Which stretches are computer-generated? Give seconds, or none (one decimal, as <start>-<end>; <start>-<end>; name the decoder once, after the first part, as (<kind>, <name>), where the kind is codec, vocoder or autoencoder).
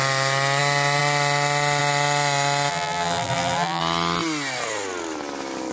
2.7-3.8 (vocoder, BigVGAN v2)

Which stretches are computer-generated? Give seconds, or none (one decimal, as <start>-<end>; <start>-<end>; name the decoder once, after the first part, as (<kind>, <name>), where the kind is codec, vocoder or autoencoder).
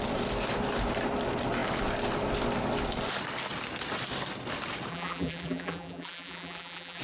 4.9-7.0 (vocoder, BigVGAN v2)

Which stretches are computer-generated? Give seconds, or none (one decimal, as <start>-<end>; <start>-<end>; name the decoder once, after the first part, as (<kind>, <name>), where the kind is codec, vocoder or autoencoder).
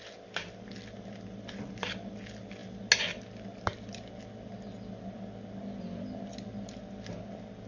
none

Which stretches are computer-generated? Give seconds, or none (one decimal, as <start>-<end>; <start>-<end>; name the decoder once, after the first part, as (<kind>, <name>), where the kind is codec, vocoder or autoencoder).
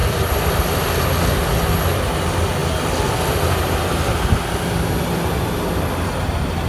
0.0-0.8 (vocoder, BigVGAN v2)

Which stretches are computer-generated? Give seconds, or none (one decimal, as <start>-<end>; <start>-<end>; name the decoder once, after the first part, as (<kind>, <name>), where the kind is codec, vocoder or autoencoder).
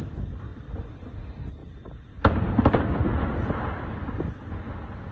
0.5-1.2 (vocoder, BigVGAN v2); 1.6-4.5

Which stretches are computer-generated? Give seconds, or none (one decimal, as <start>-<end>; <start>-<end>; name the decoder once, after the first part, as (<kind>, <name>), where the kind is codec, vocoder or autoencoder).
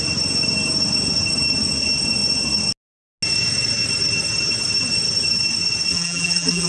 5.9-6.7 (vocoder, BigVGAN v2)